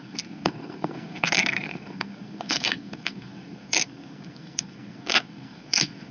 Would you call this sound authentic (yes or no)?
no